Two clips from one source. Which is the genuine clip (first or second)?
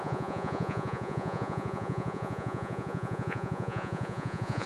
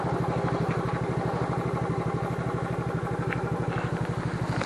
second